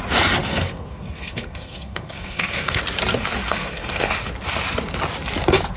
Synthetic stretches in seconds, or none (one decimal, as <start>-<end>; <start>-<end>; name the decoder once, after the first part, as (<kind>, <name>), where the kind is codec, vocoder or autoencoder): 0.4-2.8 (codec, SNAC); 3.4-4.1